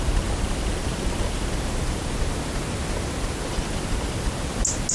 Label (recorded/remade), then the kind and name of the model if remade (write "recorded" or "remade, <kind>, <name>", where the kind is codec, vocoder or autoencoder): recorded